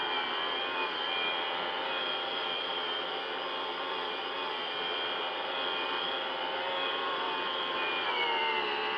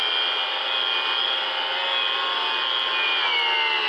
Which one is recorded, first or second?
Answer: second